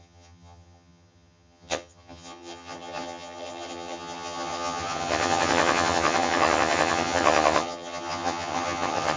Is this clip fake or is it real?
fake